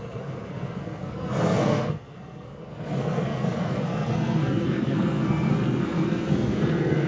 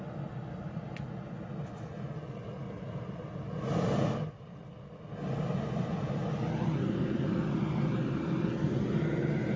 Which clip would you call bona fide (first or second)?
second